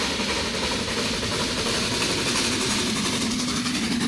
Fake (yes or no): no